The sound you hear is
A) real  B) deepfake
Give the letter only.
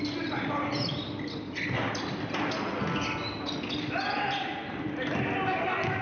A